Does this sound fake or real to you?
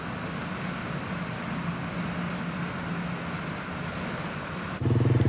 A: real